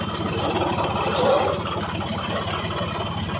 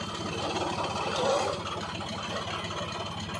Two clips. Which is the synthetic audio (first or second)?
first